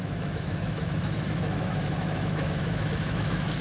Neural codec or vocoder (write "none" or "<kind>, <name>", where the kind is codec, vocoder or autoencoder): autoencoder, DAC-VAE